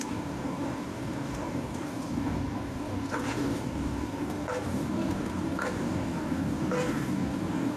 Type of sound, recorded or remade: remade